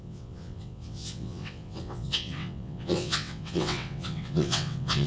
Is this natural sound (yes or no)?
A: no